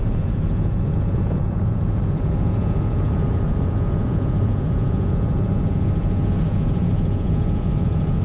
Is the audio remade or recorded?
remade